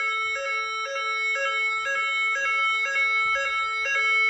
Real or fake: real